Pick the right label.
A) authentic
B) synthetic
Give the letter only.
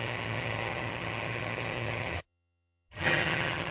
B